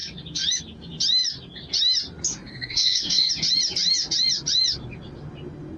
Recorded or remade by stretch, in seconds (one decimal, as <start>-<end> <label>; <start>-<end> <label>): 0.0-2.3 recorded; 2.3-3.3 remade; 3.3-5.8 recorded